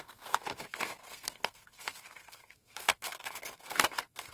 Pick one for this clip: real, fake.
fake